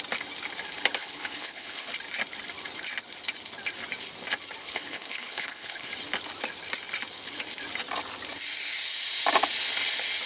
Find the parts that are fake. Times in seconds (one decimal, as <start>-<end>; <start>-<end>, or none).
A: 1.0-1.9; 4.6-5.9